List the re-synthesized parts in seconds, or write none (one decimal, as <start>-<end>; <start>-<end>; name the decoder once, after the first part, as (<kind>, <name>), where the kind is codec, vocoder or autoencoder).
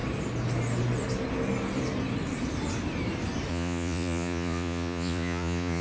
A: 3.5-5.8 (vocoder, Vocos)